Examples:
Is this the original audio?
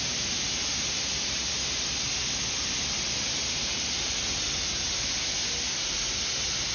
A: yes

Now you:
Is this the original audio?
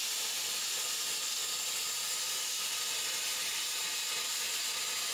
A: yes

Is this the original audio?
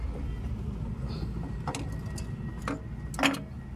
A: yes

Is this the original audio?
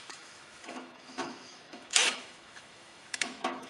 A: no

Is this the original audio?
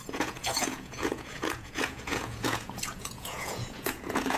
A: no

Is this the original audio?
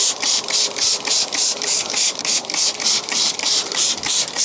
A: no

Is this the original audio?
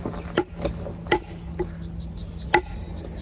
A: yes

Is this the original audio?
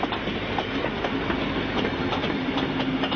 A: yes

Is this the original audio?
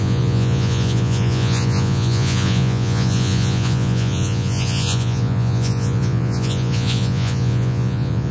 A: no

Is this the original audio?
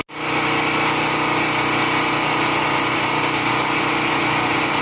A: yes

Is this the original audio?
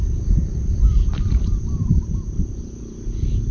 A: yes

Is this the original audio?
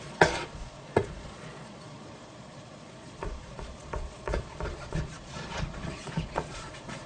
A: no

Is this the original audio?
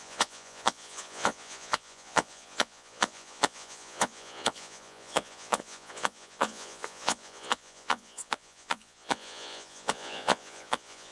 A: no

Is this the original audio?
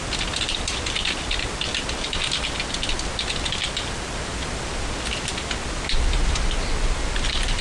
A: yes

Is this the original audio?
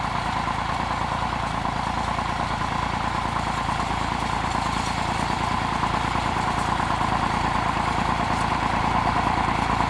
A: yes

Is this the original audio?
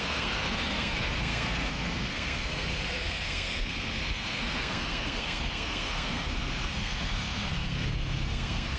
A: no